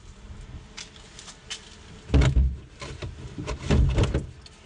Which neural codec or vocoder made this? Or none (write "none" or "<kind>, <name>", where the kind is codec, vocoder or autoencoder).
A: none